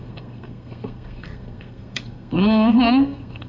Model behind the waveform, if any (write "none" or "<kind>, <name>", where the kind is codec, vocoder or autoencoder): codec, SNAC